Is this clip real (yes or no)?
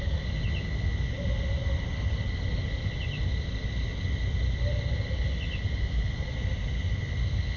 yes